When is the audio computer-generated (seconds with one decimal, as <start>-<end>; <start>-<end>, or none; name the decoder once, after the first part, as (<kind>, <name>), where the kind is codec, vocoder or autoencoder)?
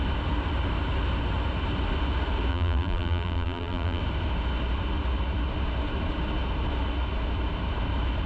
2.5-4.0 (vocoder, BigVGAN v2)